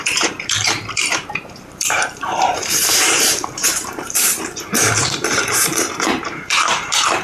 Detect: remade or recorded remade